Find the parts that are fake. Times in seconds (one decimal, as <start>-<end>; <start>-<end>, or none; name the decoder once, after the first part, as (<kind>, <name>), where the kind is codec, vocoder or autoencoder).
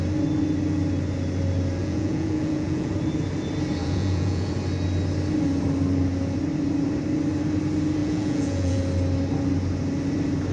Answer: 1.8-2.9 (vocoder, Vocos); 3.8-4.5; 8.0-8.8